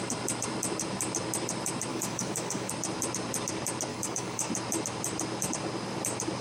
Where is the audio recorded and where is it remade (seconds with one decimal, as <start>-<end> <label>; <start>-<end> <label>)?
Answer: 0.0-1.9 recorded; 1.9-2.7 remade; 2.7-3.9 recorded; 3.9-4.5 remade; 4.5-6.4 recorded